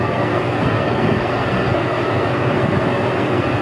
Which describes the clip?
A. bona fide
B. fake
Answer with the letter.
B